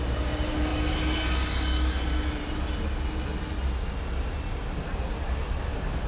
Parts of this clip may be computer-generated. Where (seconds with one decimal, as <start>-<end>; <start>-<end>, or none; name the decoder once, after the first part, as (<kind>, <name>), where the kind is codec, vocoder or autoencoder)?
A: none